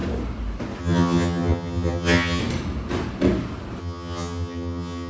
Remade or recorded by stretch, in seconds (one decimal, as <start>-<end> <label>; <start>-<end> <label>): 0.0-0.8 recorded; 0.8-2.4 remade; 2.4-3.8 recorded; 3.8-5.1 remade